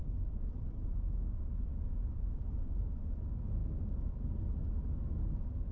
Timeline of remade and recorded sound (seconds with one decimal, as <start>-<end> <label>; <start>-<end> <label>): 0.0-5.7 recorded